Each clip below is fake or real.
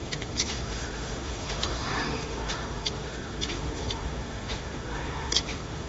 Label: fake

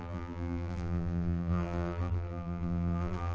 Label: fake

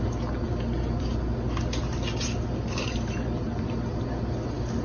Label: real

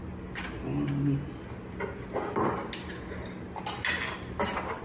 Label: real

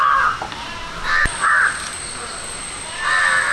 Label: real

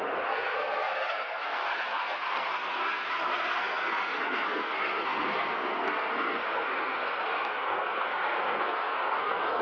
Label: fake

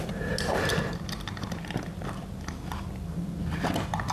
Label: real